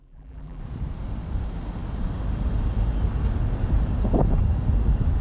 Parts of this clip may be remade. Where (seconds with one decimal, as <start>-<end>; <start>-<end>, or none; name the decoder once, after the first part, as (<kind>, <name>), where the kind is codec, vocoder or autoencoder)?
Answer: 0.0-0.6 (vocoder, BigVGAN v2)